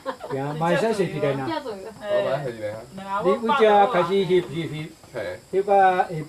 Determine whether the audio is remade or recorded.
recorded